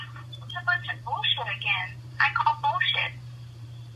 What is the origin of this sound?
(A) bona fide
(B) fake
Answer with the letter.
B